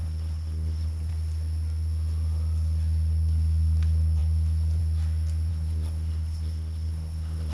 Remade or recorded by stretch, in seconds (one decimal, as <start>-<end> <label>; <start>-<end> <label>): 0.0-1.1 remade; 1.1-5.5 recorded; 5.5-7.5 remade